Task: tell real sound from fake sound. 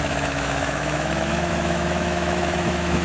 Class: fake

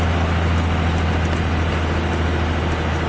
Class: real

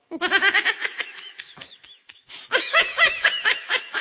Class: fake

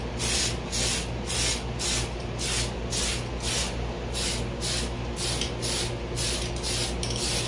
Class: real